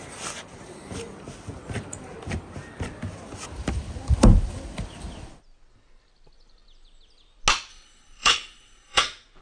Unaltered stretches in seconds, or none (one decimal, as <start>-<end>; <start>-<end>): 0.0-7.7; 9.0-9.4